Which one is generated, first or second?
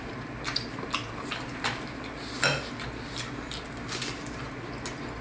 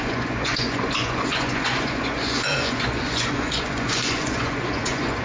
second